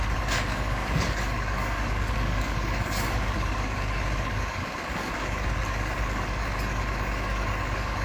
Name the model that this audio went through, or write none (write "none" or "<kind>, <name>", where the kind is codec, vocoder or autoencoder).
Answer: codec, DAC